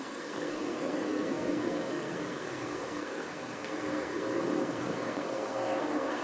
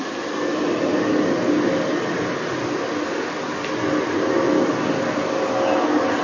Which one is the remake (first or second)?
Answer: first